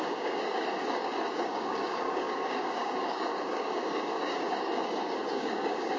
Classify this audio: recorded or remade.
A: remade